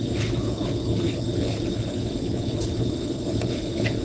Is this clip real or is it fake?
fake